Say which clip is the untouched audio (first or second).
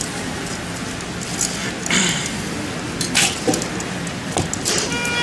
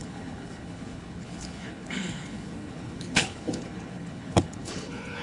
first